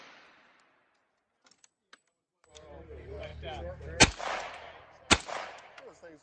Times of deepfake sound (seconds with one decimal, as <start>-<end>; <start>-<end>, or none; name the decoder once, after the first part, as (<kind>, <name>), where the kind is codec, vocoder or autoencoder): none